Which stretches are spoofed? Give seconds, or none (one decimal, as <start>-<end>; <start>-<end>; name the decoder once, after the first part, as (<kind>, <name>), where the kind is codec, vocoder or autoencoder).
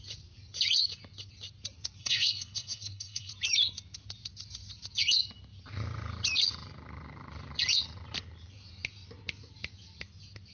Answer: 2.0-3.3 (codec, SNAC)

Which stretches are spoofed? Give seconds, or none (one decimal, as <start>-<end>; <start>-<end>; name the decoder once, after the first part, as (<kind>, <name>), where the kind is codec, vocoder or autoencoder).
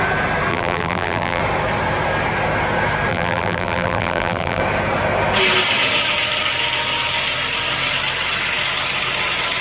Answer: 0.5-1.4 (vocoder, BigVGAN v2); 3.1-4.6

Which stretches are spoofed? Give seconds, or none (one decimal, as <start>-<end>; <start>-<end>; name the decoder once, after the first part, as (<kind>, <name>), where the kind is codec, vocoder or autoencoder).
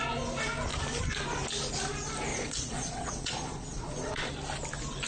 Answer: 2.3-4.3 (vocoder, Vocos)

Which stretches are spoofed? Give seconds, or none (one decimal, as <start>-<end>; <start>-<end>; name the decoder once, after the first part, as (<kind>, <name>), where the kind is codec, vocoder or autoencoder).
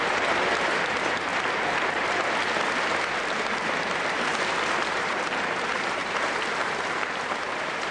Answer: 0.0-1.3 (vocoder, BigVGAN v2); 5.0-7.9